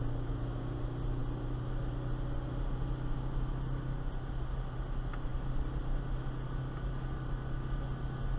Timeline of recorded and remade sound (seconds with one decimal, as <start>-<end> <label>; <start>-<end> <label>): 0.0-8.4 recorded